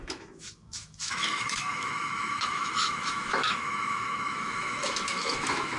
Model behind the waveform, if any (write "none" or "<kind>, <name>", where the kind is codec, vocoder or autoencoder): autoencoder, DAC-VAE